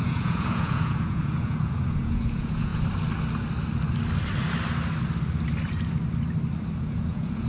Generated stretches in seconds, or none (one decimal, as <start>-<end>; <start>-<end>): 0.0-2.7; 6.8-7.5